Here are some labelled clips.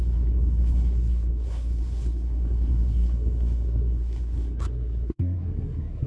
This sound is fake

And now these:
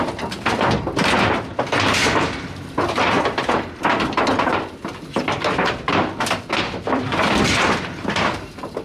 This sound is fake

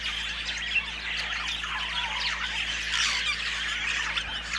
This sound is real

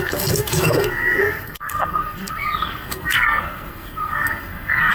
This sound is fake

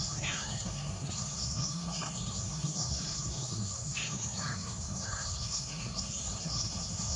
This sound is fake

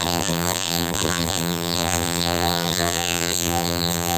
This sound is fake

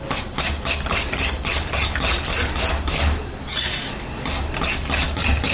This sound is real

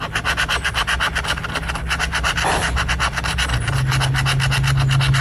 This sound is real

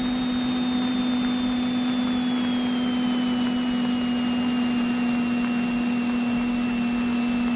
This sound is real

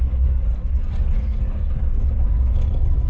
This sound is real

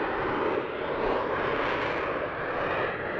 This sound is real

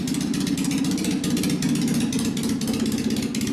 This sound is real